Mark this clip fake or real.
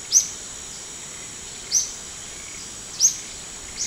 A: real